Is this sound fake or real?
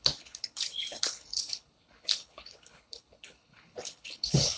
fake